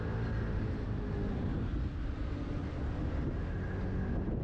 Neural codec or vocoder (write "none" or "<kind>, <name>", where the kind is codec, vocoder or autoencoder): none